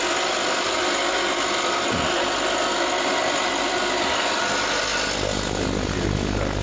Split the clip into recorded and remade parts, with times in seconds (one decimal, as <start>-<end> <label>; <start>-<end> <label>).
0.0-6.6 recorded